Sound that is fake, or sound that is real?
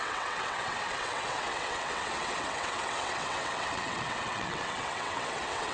fake